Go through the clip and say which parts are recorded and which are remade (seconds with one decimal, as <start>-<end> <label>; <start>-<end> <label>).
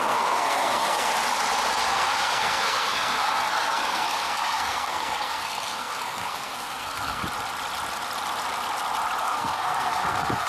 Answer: 0.0-1.1 remade; 1.1-1.8 recorded; 1.8-7.2 remade; 7.2-9.2 recorded; 9.2-10.5 remade